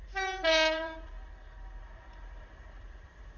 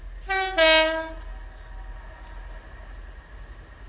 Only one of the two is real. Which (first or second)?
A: second